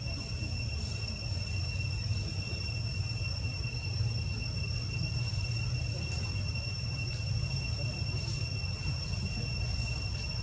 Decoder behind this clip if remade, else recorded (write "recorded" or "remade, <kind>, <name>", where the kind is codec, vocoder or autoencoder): recorded